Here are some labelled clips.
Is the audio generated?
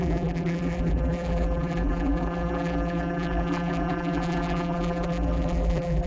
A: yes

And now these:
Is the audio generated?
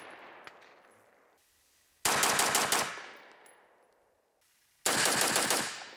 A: no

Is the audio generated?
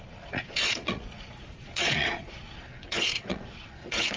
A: yes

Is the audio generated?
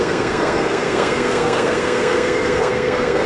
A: yes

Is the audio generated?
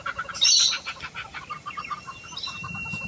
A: no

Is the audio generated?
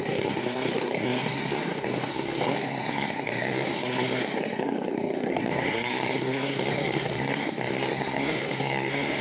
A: yes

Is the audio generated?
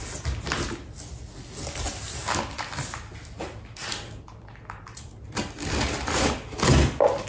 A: no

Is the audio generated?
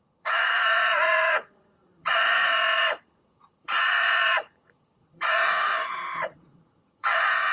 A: yes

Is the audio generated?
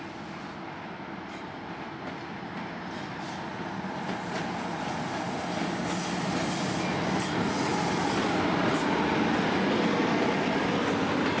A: no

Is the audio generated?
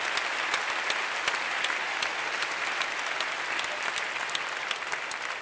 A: no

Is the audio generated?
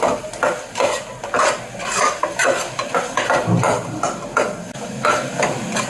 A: no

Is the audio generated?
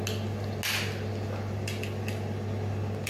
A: no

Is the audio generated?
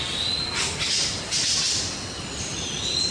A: no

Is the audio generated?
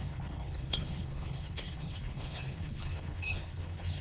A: yes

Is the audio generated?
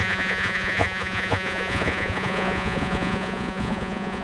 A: yes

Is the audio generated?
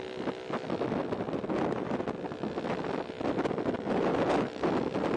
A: no